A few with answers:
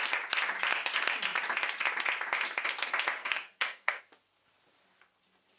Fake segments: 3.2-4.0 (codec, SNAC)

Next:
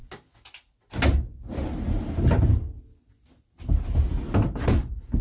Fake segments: none

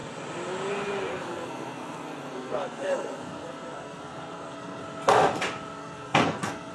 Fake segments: 1.1-4.8 (codec, SNAC); 5.8-6.7

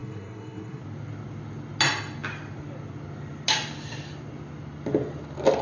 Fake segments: 0.0-0.8 (codec, SNAC)

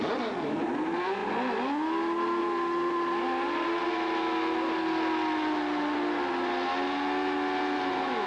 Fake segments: none

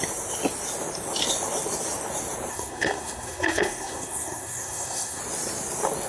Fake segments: 2.5-5.2 (codec, SNAC)

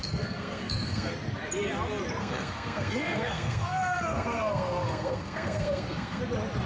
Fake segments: 0.0-1.1 (codec, SNAC); 2.2-6.2

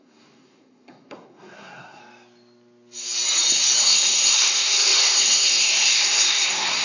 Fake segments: 0.0-2.0 (codec, SNAC); 3.8-6.8